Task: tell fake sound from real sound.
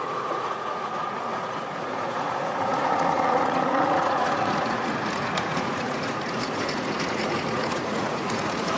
fake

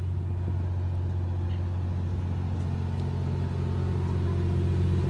real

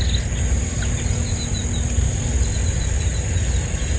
real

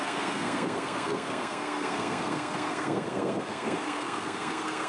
fake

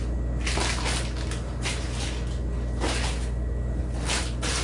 real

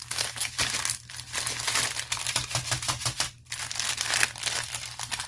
real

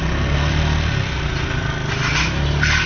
real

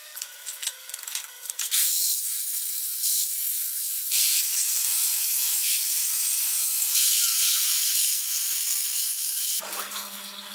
fake